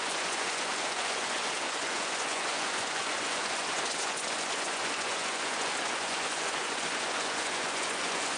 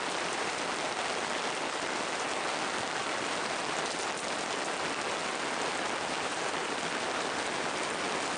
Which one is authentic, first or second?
second